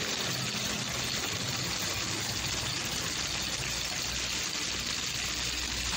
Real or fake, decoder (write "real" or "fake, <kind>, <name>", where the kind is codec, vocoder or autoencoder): real